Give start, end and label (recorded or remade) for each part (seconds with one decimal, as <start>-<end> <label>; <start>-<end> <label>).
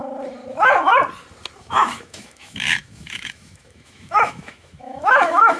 0.0-0.5 recorded; 0.5-0.9 remade; 0.9-1.6 recorded; 1.6-5.6 remade